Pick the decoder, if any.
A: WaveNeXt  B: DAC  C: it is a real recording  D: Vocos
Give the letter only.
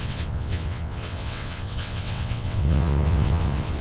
A